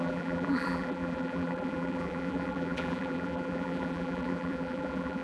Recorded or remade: remade